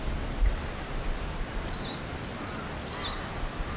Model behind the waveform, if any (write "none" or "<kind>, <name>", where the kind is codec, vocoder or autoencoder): none